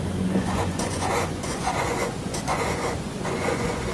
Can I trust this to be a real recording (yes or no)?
no